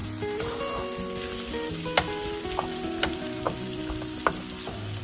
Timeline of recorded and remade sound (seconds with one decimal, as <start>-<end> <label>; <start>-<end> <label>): 0.0-2.7 recorded; 2.7-3.8 remade; 3.8-5.0 recorded